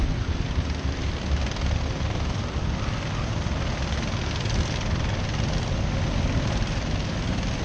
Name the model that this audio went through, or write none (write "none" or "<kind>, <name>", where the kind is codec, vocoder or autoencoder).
none